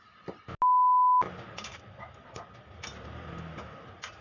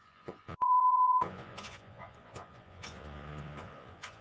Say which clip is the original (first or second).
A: first